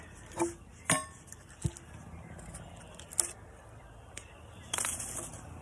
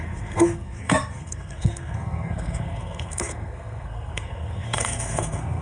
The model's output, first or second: second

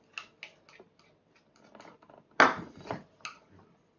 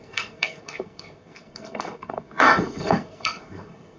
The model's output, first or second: second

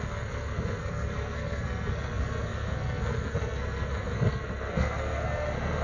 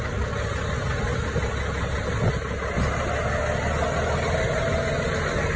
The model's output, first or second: first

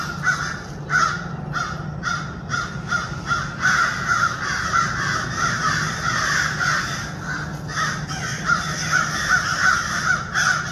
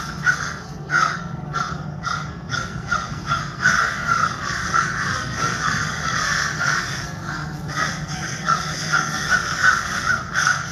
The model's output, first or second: second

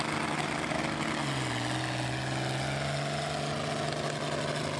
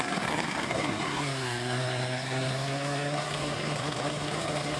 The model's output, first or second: second